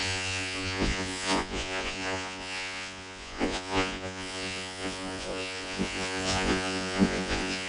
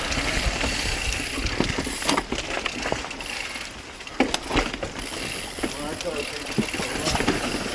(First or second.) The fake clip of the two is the first